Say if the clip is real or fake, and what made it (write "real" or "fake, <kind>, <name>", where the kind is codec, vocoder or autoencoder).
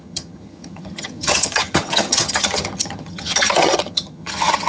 fake, vocoder, HiFi-GAN